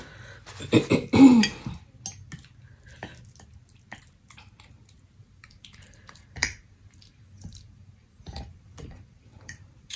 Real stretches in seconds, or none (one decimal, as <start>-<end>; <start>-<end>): 0.0-5.2